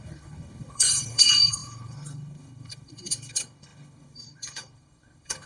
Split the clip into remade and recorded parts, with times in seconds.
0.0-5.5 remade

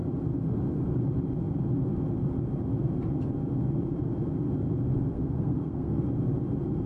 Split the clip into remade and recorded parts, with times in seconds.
0.0-4.9 recorded; 4.9-6.0 remade; 6.0-6.9 recorded

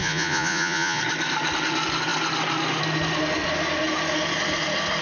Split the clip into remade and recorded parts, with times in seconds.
0.0-1.0 remade; 1.0-5.0 recorded

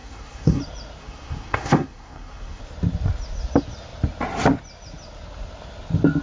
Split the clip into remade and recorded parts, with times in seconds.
0.0-0.6 remade; 0.6-1.0 recorded; 1.0-2.6 remade; 2.6-6.2 recorded

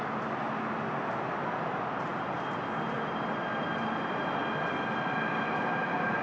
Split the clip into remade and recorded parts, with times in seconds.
0.0-6.2 recorded

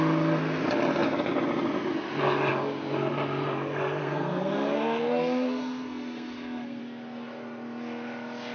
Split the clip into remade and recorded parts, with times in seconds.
0.0-4.0 recorded; 4.0-6.8 remade; 6.8-8.5 recorded

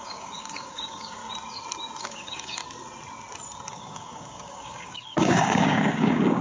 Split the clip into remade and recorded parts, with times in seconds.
0.0-1.2 remade; 1.2-2.0 recorded; 2.0-2.6 remade; 2.6-3.7 recorded; 3.7-6.4 remade